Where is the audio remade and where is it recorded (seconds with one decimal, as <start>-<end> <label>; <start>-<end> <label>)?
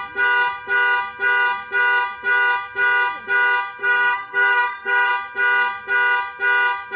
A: 0.0-3.8 recorded; 3.8-5.1 remade; 5.1-7.0 recorded